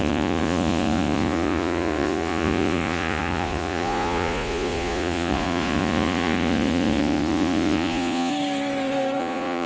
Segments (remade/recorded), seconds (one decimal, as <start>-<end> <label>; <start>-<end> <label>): 0.0-8.3 remade; 8.3-9.2 recorded; 9.2-9.7 remade